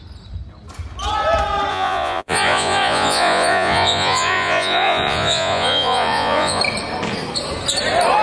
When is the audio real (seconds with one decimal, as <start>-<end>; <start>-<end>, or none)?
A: 0.0-1.7; 6.6-8.2